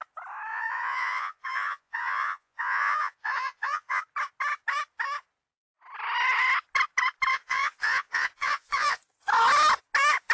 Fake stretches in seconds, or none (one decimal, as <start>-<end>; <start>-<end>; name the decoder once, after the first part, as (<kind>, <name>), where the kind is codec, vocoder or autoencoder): 0.5-4.0 (vocoder, Vocos); 7.3-9.0